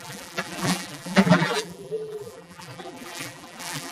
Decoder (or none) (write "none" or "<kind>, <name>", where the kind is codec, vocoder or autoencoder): vocoder, BigVGAN v2